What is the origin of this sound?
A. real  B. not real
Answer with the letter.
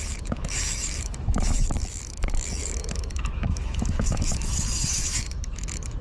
B